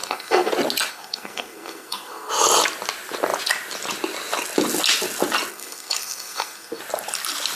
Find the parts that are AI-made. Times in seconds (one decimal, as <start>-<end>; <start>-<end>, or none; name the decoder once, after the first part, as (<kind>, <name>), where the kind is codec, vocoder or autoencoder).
0.0-0.5 (codec, SNAC); 0.9-2.3; 5.5-6.8